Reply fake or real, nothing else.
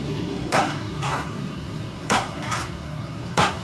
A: fake